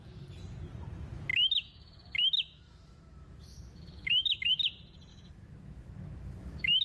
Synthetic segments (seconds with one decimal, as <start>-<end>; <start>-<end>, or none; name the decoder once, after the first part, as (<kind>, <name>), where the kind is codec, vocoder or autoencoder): 1.3-4.5 (autoencoder, DAC-VAE); 5.1-6.8